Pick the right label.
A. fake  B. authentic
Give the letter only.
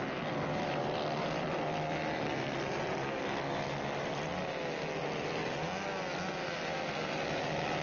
B